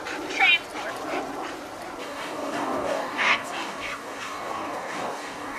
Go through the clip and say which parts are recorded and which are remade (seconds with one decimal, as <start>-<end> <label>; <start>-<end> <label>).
0.0-2.0 recorded; 2.0-5.6 remade